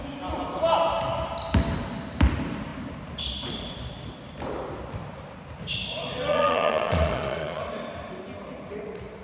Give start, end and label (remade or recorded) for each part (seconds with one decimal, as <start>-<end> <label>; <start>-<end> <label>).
0.0-6.3 recorded; 6.3-7.6 remade; 7.6-9.2 recorded